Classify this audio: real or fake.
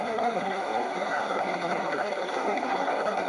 fake